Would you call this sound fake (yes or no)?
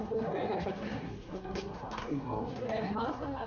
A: yes